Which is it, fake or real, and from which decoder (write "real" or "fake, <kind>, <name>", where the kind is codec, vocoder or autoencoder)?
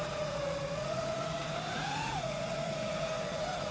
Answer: fake, vocoder, Vocos